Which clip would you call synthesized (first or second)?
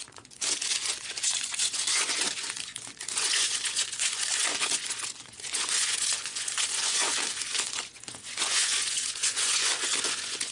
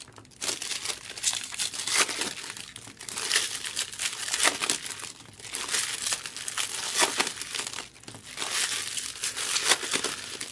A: first